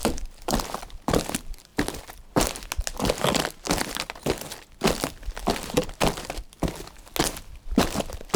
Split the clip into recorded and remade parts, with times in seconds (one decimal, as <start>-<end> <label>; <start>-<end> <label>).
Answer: 0.0-0.8 remade; 0.8-8.4 recorded